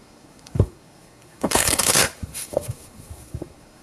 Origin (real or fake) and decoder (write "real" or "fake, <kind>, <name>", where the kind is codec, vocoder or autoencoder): fake, codec, SNAC